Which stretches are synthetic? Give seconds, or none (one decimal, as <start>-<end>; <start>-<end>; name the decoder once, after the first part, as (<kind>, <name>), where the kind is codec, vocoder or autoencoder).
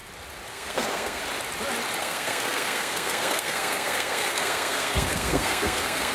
0.5-1.2 (codec, SNAC); 2.0-6.1